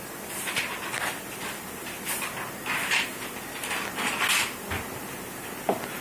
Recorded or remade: recorded